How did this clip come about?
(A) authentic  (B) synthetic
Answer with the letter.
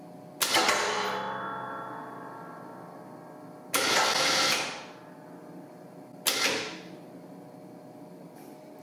A